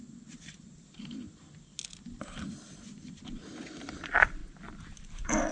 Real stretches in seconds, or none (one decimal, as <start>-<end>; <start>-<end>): 1.7-2.7; 4.4-5.0